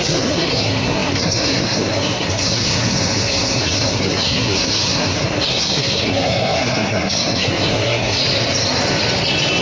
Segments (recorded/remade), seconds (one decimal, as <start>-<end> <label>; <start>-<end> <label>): 0.0-8.2 remade; 8.2-9.6 recorded